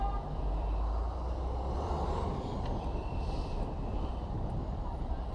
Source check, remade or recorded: remade